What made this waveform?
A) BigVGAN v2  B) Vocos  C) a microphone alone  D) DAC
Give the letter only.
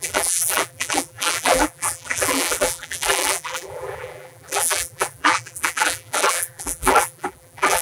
A